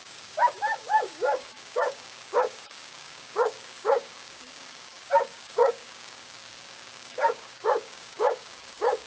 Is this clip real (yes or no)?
no